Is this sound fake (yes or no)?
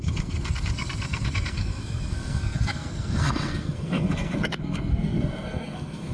yes